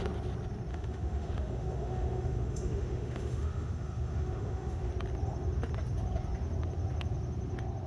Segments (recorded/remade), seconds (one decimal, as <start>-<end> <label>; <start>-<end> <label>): 0.0-0.7 recorded; 0.7-4.9 remade; 4.9-7.9 recorded